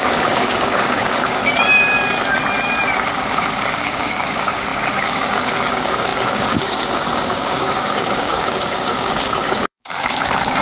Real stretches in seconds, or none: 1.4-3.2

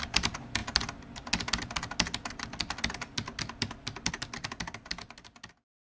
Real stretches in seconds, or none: 0.0-5.8

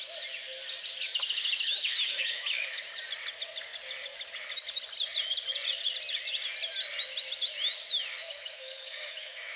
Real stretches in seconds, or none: 0.0-1.1; 2.8-8.2

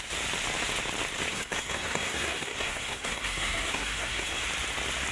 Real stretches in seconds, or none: 0.0-1.3; 4.4-5.1

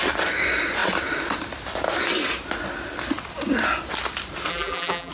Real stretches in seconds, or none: 0.0-4.5

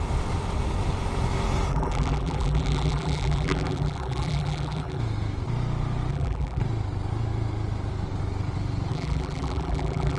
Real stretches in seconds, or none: 0.0-1.7; 5.0-6.1; 6.6-8.9